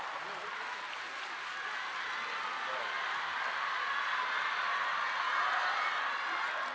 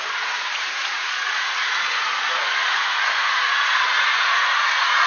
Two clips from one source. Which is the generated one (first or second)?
second